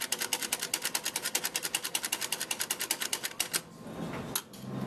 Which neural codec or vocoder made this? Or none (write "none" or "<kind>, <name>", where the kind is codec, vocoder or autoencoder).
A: none